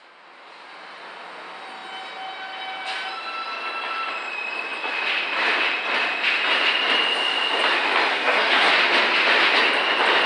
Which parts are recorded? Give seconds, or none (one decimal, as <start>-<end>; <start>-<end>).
0.0-8.1; 8.7-10.3